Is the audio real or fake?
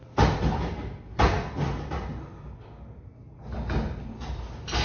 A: real